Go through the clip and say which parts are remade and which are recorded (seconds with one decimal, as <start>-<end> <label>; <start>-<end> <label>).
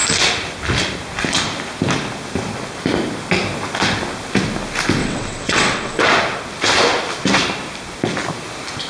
0.0-5.0 recorded; 5.0-6.0 remade; 6.0-8.9 recorded